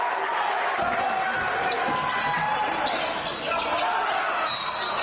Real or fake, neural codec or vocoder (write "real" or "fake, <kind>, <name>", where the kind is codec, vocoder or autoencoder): real